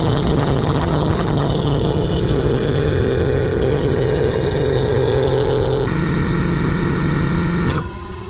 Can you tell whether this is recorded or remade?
remade